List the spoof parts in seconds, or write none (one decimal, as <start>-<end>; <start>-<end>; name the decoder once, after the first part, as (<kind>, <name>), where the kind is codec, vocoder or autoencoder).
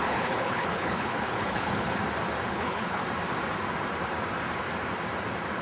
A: 0.0-2.0 (codec, HILCodec); 2.5-3.0